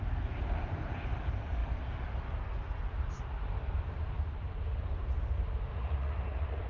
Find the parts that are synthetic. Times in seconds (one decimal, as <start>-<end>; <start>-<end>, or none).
5.7-6.7